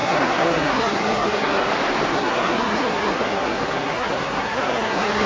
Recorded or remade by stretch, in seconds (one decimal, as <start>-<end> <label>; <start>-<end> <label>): 0.0-1.7 remade; 1.7-2.1 recorded; 2.1-5.3 remade